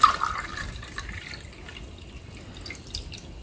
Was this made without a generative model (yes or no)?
yes